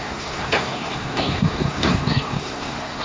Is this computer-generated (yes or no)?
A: yes